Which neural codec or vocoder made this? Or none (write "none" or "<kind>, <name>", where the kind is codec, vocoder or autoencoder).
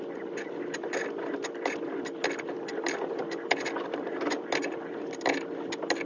none